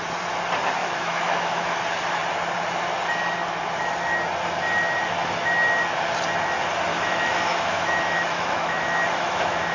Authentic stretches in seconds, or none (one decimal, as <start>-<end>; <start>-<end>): 0.0-0.8; 1.8-6.9